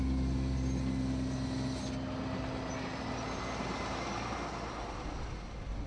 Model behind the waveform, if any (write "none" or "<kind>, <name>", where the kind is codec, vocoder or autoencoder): none